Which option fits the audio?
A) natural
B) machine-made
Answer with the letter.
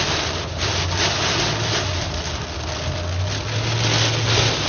A